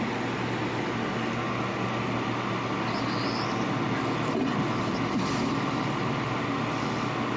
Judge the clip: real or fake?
real